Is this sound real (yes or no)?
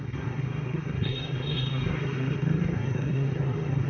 no